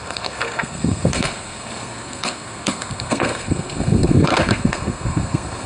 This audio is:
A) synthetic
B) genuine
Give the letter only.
A